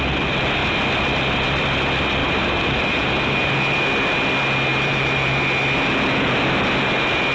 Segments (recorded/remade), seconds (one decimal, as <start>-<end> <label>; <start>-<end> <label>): 0.0-2.2 recorded; 2.2-3.5 remade; 3.5-4.7 recorded; 4.7-5.4 remade; 5.4-7.3 recorded